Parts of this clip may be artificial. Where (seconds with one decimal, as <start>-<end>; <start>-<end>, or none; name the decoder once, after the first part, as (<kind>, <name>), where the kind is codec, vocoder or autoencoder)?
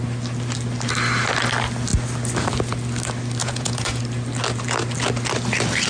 3.4-4.0 (vocoder, Vocos)